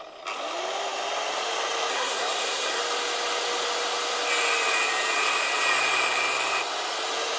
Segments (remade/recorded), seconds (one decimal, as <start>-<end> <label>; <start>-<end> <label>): 0.0-1.9 recorded; 1.9-2.8 remade; 2.8-7.4 recorded